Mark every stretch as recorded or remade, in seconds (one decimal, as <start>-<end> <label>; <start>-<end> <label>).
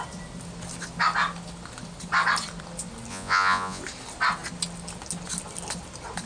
0.0-3.1 recorded; 3.1-3.8 remade; 3.8-6.3 recorded